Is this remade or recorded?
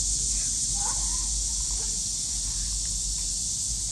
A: recorded